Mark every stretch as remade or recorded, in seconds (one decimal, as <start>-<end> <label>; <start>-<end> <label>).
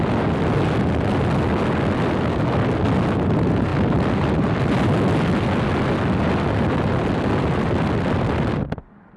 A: 0.0-9.2 recorded